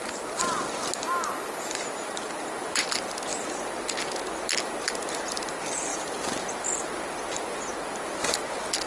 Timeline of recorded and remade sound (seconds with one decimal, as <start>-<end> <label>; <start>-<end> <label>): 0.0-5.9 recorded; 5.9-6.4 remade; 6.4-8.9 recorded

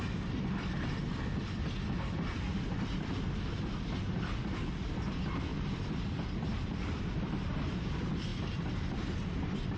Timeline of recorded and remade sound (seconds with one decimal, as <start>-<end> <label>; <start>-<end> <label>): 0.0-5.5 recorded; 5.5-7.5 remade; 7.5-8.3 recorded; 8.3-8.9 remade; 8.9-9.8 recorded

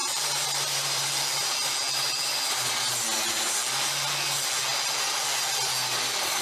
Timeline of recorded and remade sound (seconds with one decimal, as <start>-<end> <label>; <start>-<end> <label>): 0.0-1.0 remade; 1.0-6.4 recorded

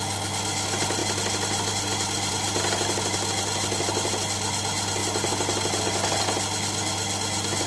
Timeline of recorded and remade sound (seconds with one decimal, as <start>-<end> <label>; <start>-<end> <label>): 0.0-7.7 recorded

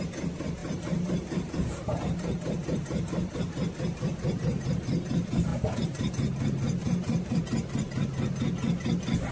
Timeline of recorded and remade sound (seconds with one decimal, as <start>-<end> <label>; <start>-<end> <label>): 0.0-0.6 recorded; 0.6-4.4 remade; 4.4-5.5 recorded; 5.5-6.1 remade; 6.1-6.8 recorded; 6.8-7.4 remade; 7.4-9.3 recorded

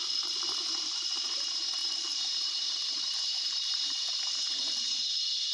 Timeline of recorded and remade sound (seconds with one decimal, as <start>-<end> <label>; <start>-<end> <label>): 0.0-1.8 recorded; 1.8-4.2 remade; 4.2-5.5 recorded